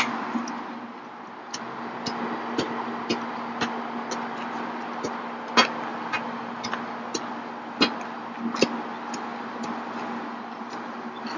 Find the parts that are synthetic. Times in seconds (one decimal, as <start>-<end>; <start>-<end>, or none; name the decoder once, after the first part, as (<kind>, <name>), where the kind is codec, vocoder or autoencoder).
none